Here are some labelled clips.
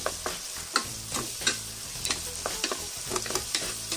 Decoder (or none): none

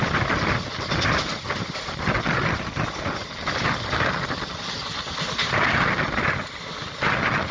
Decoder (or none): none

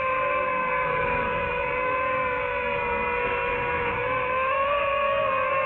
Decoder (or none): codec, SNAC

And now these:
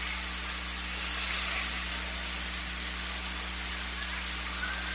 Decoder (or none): none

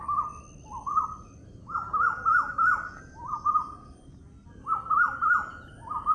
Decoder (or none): none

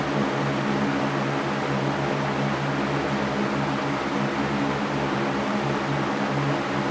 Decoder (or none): none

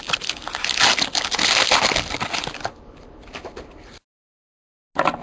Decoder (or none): none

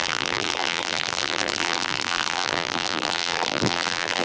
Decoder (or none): vocoder, BigVGAN v2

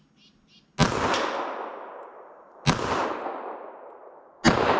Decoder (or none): none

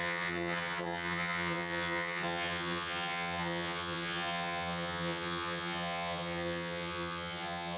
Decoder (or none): vocoder, HiFi-GAN